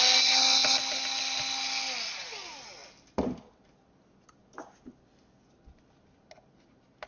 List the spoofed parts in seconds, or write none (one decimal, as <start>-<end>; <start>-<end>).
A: none